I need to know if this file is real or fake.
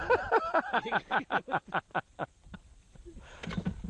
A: real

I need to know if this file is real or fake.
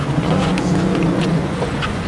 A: fake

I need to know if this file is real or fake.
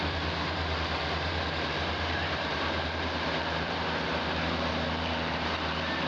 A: fake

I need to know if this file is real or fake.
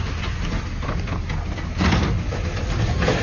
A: real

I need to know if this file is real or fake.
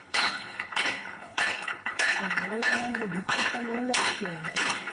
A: fake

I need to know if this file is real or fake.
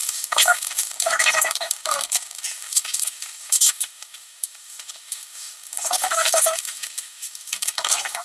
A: fake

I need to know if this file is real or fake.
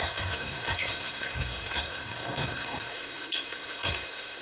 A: fake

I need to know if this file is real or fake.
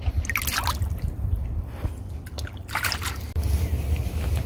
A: real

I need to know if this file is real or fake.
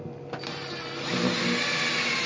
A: real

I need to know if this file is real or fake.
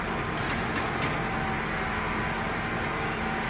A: real